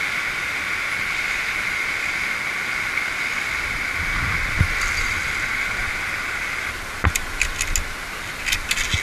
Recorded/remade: recorded